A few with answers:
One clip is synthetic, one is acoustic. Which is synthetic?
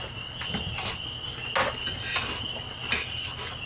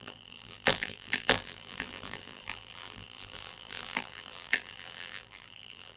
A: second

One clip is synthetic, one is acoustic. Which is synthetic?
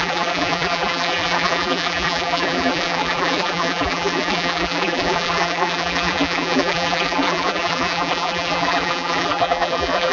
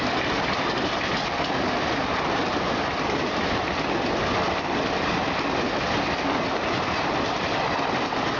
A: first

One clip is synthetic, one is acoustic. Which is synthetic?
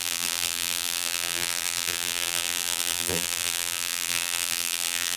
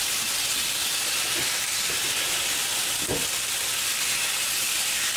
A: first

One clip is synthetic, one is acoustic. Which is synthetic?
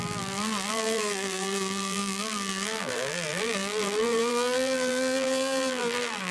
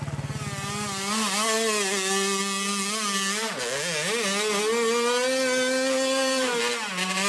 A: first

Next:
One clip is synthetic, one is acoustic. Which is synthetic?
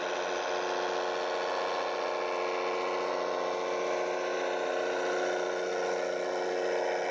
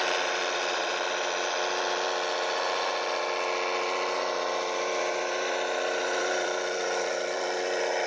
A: second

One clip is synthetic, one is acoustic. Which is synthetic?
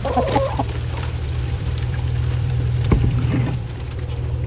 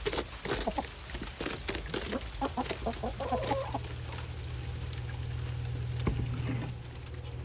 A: first